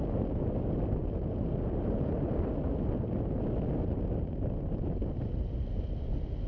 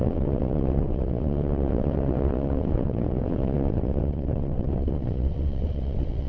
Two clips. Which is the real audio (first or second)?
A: first